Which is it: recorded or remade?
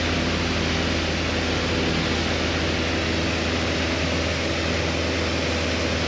recorded